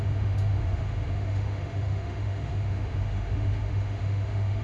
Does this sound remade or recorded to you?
remade